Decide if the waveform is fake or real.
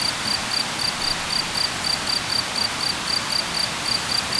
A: real